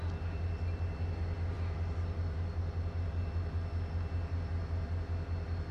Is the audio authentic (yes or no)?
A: yes